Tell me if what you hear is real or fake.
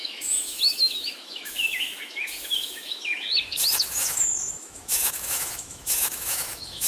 fake